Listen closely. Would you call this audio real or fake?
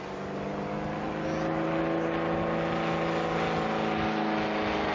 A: real